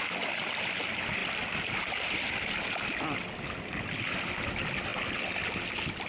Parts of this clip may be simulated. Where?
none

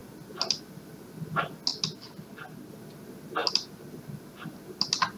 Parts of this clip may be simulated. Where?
none

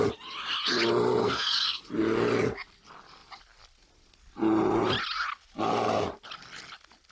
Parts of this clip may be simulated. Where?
1.2-1.8 (codec, SNAC)

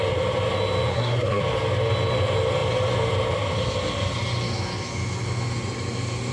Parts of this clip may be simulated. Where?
0.9-1.4 (codec, SNAC)

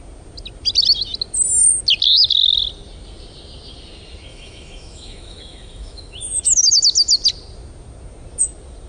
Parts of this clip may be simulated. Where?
4.3-6.8 (autoencoder, DAC-VAE)

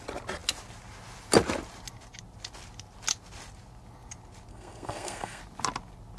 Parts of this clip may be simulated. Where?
4.5-5.4 (codec, SNAC)

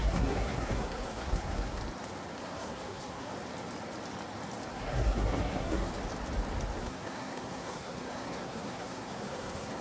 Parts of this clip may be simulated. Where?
0.0-1.8 (codec, SNAC); 2.4-3.3; 4.7-5.9; 6.8-9.8